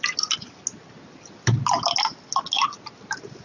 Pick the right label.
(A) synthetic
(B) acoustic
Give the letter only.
B